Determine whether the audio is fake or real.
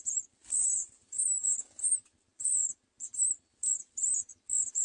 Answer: fake